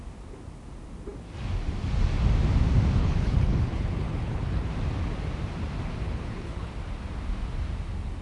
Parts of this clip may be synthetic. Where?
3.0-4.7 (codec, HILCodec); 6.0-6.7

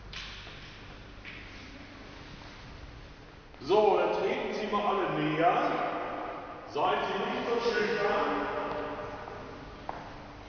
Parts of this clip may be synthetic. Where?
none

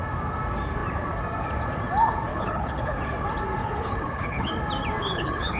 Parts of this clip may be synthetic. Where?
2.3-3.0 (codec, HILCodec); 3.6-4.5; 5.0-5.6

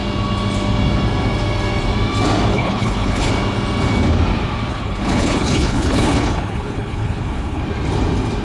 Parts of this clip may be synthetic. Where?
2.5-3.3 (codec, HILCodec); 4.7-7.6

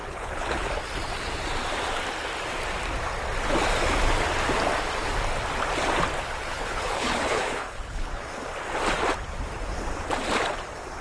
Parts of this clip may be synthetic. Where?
0.0-0.7 (codec, HILCodec); 6.4-8.3

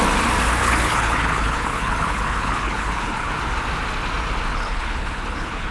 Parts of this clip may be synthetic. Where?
0.6-3.3 (codec, HILCodec); 4.5-5.7

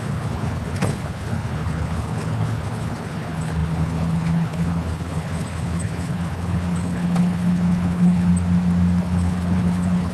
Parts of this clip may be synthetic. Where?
0.0-8.3 (codec, HILCodec); 9.0-10.1